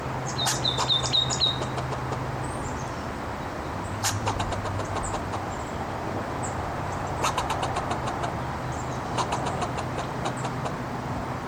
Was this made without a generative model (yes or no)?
no